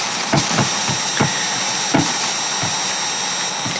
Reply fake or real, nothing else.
real